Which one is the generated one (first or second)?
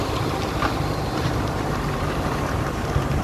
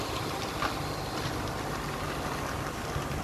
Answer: first